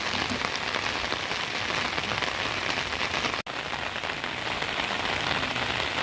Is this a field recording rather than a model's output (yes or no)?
yes